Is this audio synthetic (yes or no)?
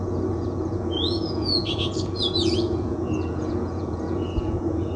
yes